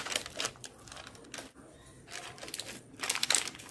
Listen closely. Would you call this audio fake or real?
real